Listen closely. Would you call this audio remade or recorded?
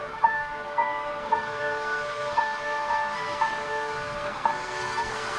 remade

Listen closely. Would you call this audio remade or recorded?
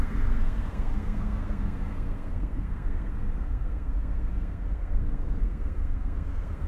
remade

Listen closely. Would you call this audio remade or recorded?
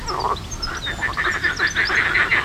recorded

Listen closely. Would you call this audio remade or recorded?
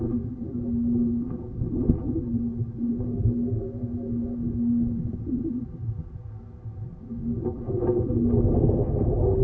recorded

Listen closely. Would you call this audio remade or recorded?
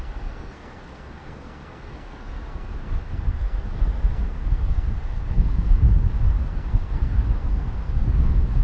remade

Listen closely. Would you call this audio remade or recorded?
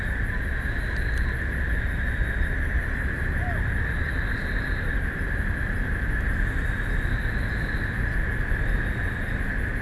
recorded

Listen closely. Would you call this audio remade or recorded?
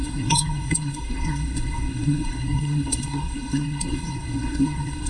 remade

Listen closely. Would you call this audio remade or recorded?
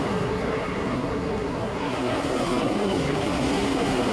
remade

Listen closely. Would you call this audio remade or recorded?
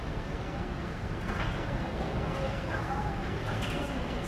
remade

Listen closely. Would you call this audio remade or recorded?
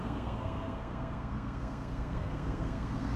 remade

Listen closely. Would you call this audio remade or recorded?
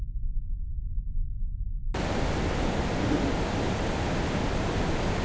recorded